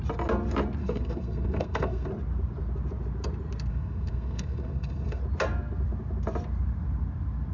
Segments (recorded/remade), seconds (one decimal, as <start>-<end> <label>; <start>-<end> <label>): 0.0-0.8 recorded; 0.8-2.1 remade; 2.1-3.7 recorded; 3.7-5.2 remade; 5.2-7.5 recorded